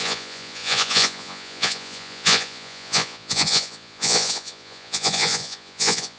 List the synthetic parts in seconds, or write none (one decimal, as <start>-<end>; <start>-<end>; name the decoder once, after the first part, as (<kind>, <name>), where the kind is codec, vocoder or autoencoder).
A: 0.0-6.2 (vocoder, Vocos)